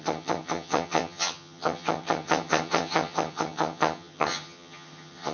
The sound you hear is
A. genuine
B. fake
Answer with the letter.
B